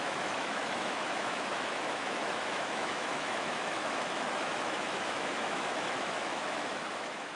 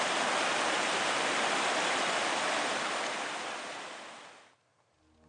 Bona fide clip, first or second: second